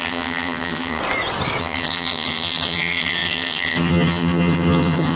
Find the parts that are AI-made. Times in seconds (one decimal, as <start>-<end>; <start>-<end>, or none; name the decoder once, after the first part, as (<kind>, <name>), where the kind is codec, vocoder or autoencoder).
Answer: 0.0-1.0 (vocoder, HiFi-GAN); 1.6-5.2